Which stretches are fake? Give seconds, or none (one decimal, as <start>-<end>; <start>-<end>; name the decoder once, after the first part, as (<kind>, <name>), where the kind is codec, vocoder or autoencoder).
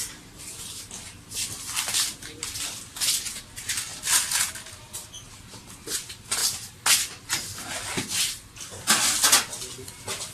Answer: none